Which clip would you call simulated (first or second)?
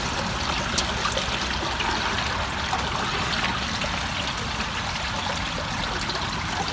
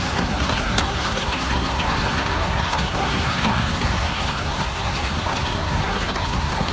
second